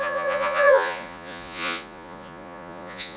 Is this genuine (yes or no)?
no